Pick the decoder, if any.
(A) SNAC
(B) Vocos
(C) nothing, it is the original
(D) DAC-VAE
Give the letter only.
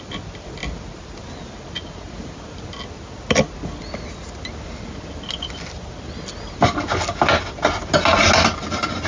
C